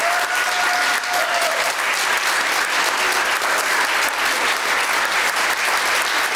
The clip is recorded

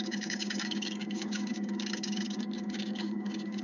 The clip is remade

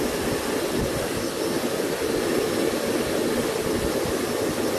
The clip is recorded